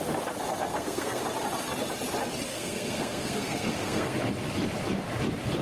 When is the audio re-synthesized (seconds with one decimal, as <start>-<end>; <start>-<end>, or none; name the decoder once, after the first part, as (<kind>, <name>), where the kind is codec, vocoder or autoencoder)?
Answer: 0.7-1.2 (codec, SNAC); 2.5-4.2